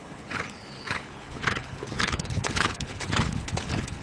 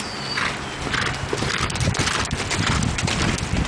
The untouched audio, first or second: second